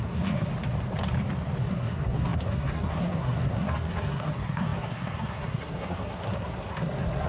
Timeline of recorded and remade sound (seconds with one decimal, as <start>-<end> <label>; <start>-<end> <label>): 0.0-0.5 remade; 0.5-1.6 recorded; 1.6-7.3 remade